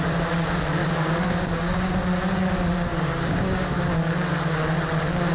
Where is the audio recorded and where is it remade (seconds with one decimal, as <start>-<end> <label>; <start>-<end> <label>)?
0.0-0.8 recorded; 0.8-1.9 remade; 1.9-2.9 recorded; 2.9-4.0 remade; 4.0-5.3 recorded